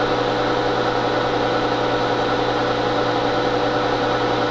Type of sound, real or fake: real